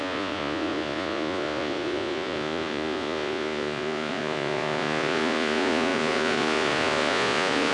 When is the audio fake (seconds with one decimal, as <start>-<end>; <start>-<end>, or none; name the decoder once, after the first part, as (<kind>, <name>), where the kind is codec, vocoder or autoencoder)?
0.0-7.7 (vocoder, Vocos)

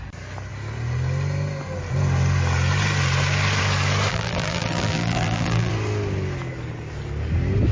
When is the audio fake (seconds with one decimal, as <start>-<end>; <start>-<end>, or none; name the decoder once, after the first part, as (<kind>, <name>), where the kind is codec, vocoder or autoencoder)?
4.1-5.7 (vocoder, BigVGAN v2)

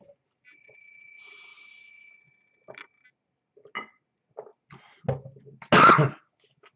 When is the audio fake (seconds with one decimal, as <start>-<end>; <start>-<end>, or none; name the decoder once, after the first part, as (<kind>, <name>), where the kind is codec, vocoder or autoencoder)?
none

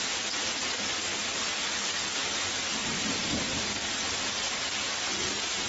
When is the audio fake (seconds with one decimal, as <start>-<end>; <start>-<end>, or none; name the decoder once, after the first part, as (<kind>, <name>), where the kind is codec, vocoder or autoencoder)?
none

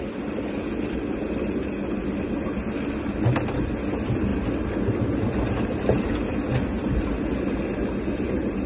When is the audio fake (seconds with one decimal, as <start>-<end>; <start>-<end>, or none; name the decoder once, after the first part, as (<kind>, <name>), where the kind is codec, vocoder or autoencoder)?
none

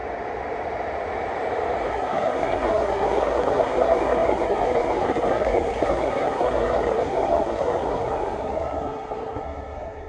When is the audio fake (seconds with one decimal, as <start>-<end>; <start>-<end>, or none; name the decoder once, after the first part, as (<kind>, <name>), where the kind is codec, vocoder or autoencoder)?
1.9-10.1 (codec, SNAC)